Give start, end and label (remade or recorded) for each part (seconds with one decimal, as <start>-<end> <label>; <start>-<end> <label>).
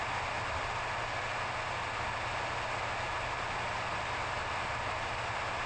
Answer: 0.0-5.7 recorded